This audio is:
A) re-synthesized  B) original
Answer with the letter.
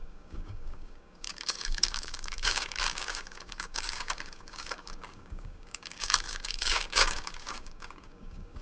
A